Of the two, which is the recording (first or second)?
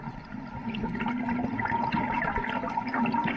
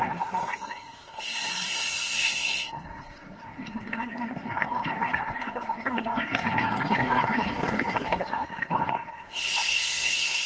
first